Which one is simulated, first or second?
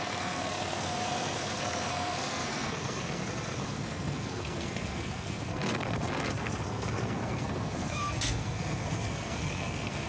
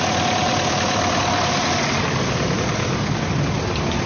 first